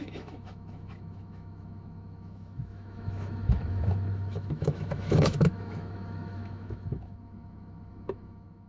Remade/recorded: remade